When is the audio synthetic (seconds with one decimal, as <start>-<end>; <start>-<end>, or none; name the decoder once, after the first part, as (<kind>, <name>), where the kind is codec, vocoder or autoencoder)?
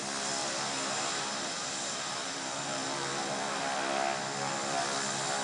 0.4-3.6 (vocoder, BigVGAN v2)